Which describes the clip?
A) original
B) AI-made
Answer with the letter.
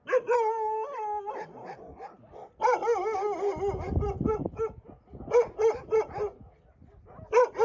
A